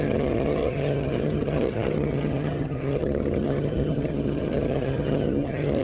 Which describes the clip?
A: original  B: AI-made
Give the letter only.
B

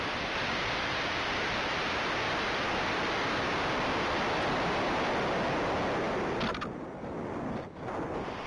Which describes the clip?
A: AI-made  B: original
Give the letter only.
B